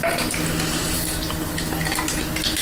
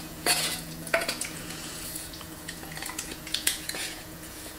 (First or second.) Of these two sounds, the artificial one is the second